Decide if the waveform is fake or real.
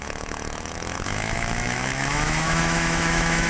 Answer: fake